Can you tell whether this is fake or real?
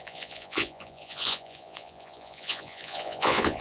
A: fake